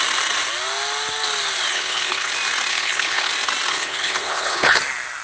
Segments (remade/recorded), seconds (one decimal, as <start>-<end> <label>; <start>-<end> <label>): 0.0-1.7 recorded; 1.7-2.3 remade; 2.3-2.7 recorded; 2.7-3.3 remade; 3.3-3.7 recorded; 3.7-4.8 remade; 4.8-5.2 recorded